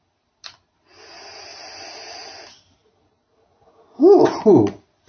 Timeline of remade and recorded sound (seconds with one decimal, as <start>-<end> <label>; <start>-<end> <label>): 0.0-5.1 recorded